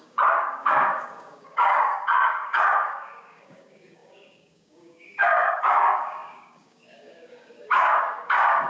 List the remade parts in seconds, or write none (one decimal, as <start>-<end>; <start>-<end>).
0.0-8.7